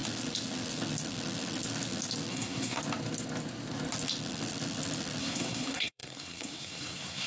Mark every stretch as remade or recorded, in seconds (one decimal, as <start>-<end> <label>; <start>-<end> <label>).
0.0-2.3 recorded; 2.3-2.8 remade; 2.8-5.2 recorded; 5.2-7.3 remade